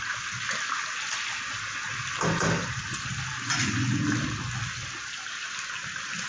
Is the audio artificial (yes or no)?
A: no